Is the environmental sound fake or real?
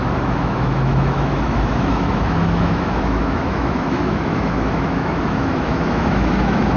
fake